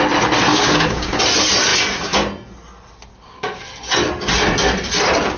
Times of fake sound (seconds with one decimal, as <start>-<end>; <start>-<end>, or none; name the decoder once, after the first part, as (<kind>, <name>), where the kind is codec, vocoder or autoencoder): 0.5-1.2 (codec, DAC); 3.1-3.6